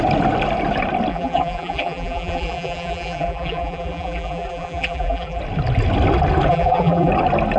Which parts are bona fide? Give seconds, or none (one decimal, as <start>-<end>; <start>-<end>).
0.0-1.1; 5.4-6.5; 7.1-7.6